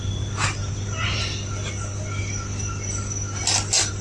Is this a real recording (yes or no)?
yes